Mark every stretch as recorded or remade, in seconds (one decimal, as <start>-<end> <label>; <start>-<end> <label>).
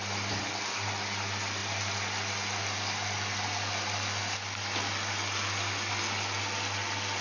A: 0.0-7.2 recorded